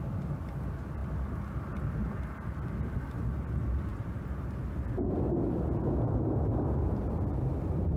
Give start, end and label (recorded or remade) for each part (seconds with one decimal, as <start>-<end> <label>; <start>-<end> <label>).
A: 0.0-3.9 recorded; 3.9-4.7 remade; 4.7-8.0 recorded